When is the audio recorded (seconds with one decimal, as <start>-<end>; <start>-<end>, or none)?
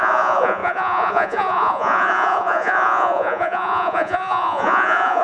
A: none